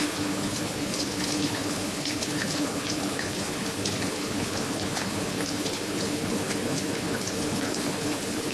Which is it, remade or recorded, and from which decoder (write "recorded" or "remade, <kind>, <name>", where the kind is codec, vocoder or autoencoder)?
remade, codec, HILCodec